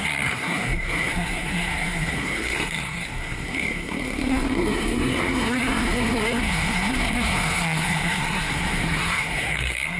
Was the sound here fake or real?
fake